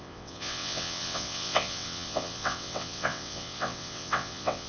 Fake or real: fake